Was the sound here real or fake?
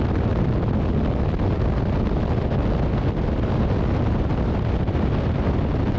real